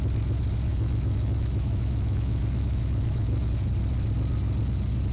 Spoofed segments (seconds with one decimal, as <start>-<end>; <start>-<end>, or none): 0.7-3.5